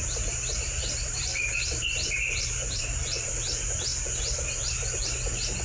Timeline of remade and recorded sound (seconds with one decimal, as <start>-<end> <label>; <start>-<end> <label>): 0.0-3.9 remade; 3.9-5.6 recorded